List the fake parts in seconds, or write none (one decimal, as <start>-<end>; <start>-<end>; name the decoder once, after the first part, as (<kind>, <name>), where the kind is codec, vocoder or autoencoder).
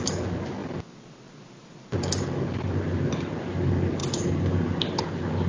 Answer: none